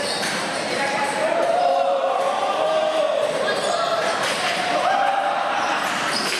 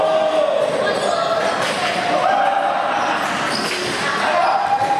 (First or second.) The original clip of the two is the second